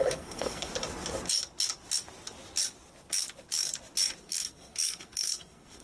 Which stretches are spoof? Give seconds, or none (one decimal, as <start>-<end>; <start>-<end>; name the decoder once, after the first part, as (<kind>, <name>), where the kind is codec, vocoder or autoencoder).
0.0-0.7 (codec, SNAC); 4.2-5.8